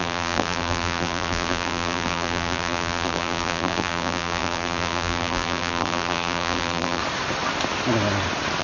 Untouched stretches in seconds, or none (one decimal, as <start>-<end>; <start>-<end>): 7.0-8.6